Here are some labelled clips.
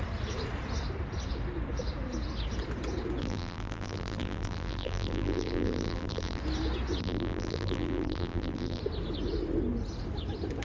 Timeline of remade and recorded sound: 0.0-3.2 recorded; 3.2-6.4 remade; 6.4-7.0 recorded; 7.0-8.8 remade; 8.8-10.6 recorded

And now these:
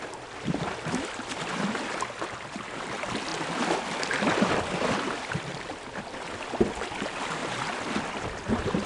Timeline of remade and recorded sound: 0.0-7.4 remade; 7.4-8.0 recorded; 8.0-8.9 remade

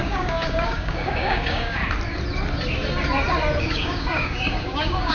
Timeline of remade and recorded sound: 0.0-1.8 remade; 1.8-3.6 recorded; 3.6-5.1 remade